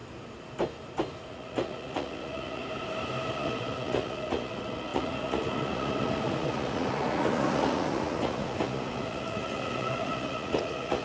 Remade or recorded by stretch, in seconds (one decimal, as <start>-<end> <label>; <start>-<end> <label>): 0.0-1.3 recorded; 1.3-2.6 remade; 2.6-3.3 recorded; 3.3-11.0 remade